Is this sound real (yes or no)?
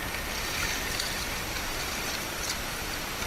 yes